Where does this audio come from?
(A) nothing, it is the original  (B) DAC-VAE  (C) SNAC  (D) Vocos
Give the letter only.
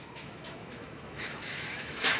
B